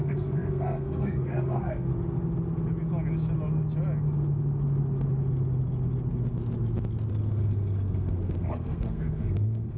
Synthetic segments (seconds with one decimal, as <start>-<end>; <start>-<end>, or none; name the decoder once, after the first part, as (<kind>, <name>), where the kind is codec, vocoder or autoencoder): 0.0-1.9 (codec, SNAC); 7.1-9.8